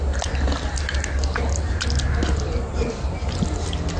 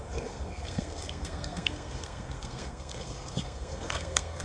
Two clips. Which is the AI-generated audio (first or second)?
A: second